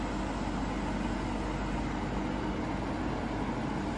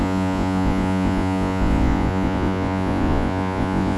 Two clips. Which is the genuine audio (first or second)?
first